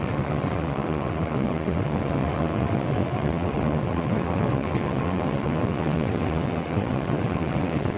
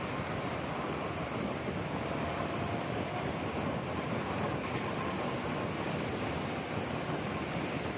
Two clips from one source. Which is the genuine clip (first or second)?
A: second